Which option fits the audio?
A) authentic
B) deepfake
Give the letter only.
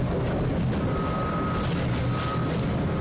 A